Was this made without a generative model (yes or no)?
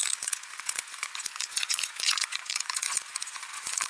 no